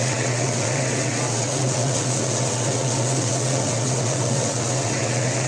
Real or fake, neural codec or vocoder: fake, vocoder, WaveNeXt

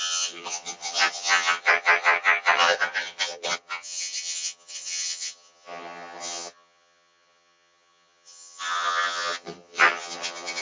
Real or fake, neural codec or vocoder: fake, vocoder, HiFi-GAN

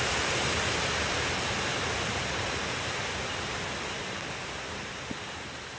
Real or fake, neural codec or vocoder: real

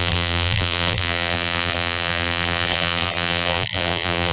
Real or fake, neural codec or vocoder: fake, vocoder, BigVGAN v2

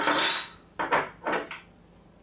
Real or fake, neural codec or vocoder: real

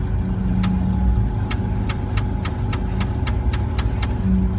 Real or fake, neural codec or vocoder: real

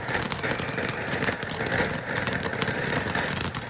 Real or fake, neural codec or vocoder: real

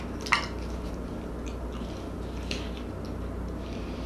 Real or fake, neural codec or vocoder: real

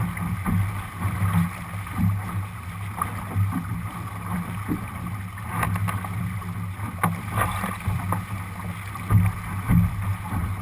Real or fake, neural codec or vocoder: real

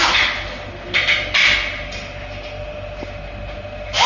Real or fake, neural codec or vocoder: real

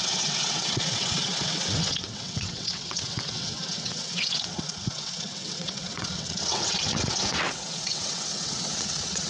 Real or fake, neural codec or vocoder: fake, vocoder, WaveNeXt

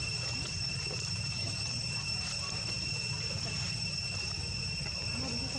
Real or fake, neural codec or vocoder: fake, vocoder, BigVGAN v2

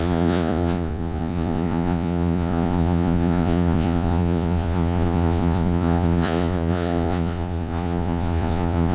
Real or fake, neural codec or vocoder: fake, vocoder, Vocos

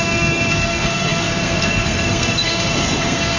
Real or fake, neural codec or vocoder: fake, codec, SNAC